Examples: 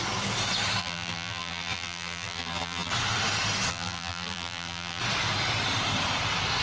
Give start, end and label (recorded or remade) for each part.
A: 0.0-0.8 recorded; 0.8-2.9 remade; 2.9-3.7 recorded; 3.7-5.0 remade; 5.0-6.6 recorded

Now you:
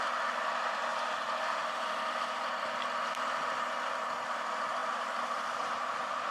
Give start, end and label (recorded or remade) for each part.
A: 0.0-0.9 recorded; 0.9-4.3 remade; 4.3-6.3 recorded

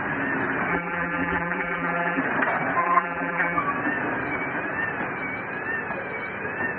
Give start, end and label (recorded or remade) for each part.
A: 0.0-0.7 recorded; 0.7-2.2 remade; 2.2-2.8 recorded; 2.8-3.6 remade; 3.6-6.8 recorded

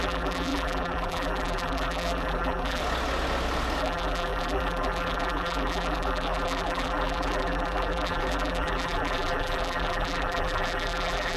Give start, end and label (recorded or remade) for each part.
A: 0.0-2.8 remade; 2.8-3.8 recorded; 3.8-11.4 remade

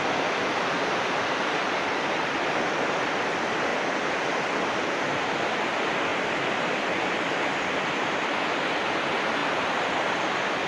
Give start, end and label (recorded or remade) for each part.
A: 0.0-10.7 recorded